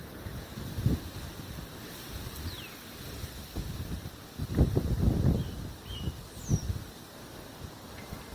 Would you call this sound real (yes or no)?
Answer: yes